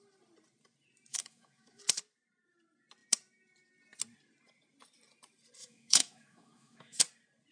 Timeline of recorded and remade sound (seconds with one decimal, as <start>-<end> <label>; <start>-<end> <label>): 0.0-1.1 recorded; 1.1-1.8 remade; 1.8-5.6 recorded; 5.6-7.0 remade; 7.0-7.5 recorded